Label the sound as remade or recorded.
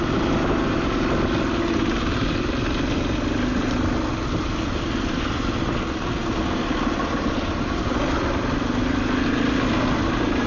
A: recorded